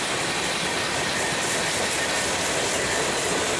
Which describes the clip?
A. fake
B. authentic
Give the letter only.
B